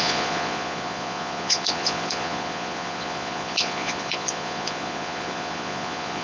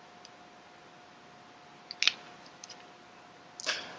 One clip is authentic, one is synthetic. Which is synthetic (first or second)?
first